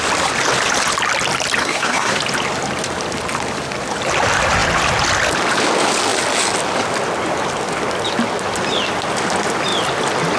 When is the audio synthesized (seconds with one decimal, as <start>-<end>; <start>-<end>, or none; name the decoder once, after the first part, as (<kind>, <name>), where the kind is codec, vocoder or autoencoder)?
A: 1.6-2.2 (codec, SNAC)